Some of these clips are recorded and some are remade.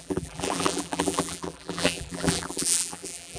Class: remade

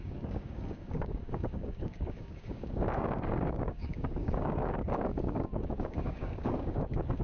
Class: remade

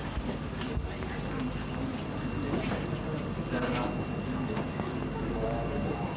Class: recorded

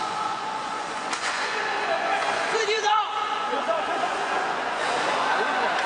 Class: remade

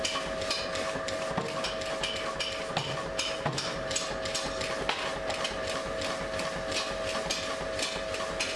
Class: recorded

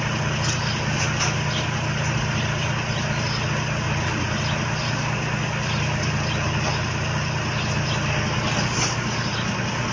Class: recorded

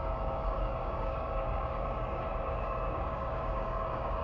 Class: remade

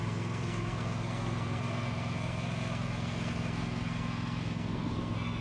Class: remade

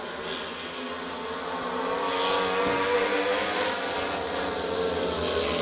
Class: recorded